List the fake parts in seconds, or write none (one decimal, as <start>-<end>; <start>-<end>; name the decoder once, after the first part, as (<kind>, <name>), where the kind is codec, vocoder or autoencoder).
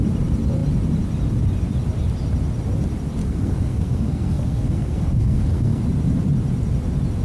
3.2-5.8 (codec, SNAC)